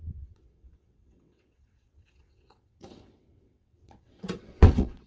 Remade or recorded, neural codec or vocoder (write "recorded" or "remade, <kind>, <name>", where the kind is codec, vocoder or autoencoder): remade, vocoder, WaveNeXt